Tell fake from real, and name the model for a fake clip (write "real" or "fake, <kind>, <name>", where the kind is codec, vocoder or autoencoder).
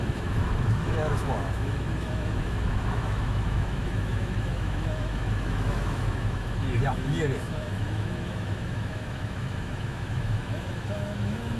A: fake, autoencoder, DAC-VAE